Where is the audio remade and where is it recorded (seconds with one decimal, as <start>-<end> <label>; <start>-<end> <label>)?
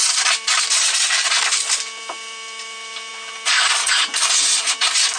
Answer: 0.0-5.2 recorded